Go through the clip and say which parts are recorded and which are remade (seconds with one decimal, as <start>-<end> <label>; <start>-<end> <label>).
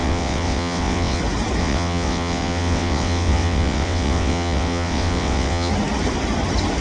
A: 0.0-1.2 remade; 1.2-1.6 recorded; 1.6-5.7 remade; 5.7-6.8 recorded